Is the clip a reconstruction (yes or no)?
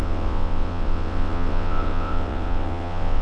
yes